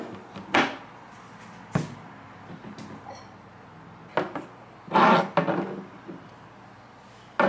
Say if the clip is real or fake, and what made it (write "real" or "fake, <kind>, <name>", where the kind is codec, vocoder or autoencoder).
real